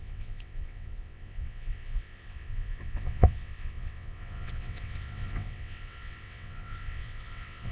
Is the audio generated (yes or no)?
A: yes